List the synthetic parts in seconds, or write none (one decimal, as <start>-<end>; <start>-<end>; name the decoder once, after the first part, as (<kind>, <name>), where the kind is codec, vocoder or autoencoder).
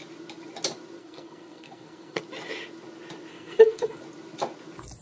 1.0-2.2 (codec, SNAC); 3.3-4.0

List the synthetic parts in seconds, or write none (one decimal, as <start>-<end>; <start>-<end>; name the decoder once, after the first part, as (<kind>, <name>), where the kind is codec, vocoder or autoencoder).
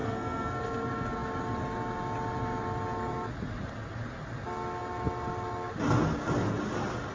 0.0-0.5 (codec, SNAC)